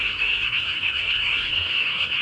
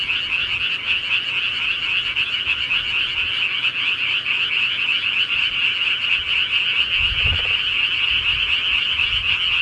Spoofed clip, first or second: first